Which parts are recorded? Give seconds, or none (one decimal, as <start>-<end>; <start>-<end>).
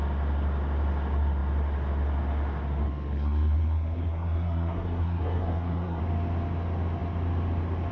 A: 0.0-2.8; 6.0-7.9